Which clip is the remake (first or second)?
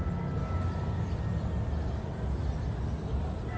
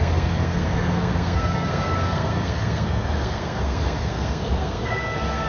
second